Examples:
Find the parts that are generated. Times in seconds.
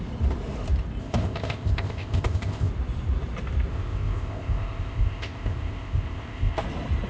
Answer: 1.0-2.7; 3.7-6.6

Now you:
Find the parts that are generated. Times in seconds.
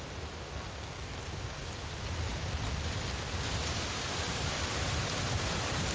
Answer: 0.5-1.2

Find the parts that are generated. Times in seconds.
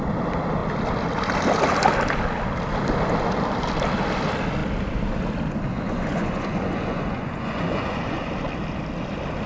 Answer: 5.7-8.3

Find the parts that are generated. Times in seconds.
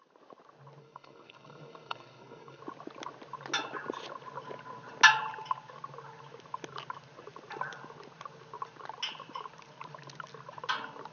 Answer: 0.8-2.6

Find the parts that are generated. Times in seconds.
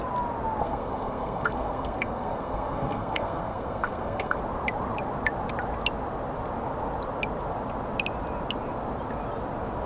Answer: 0.6-4.4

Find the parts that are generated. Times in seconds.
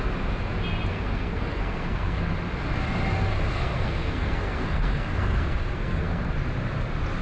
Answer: 0.9-2.2; 3.3-6.3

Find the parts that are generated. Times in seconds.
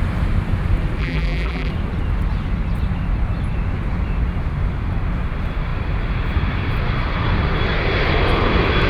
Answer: 1.0-1.7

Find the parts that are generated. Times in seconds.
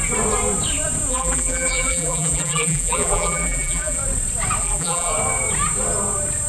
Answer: 1.1-4.0; 4.6-5.1